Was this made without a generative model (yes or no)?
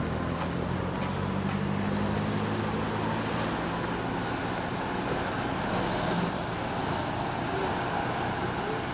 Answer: yes